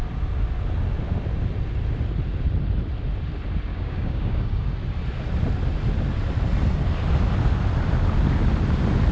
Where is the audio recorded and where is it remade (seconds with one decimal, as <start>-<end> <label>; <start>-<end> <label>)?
0.0-3.7 recorded; 3.7-4.7 remade; 4.7-9.1 recorded